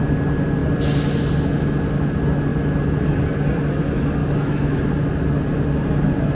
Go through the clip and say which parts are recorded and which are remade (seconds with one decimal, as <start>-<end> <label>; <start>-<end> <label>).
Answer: 0.0-4.2 recorded; 4.2-4.8 remade; 4.8-6.3 recorded